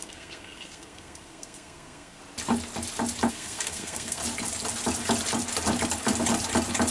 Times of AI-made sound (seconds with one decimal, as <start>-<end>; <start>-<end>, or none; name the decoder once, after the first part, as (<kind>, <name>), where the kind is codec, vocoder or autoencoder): 0.0-2.2 (codec, SNAC); 3.3-4.2